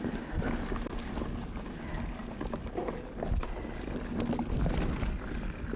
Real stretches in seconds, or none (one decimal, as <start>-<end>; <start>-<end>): 0.0-5.8